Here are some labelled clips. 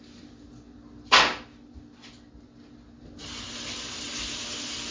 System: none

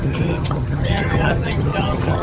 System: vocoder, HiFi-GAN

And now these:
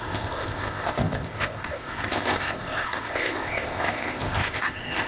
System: codec, ZipCodec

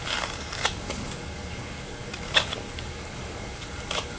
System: codec, DAC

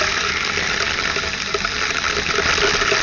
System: none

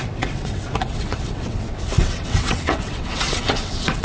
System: vocoder, WaveNeXt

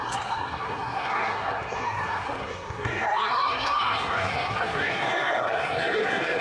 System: codec, SNAC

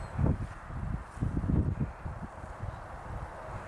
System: none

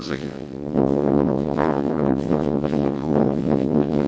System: vocoder, WaveNeXt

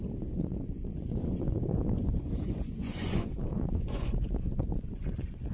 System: vocoder, Vocos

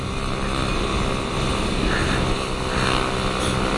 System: none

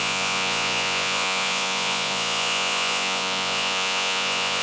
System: vocoder, Vocos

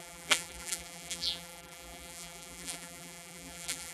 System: vocoder, BigVGAN v2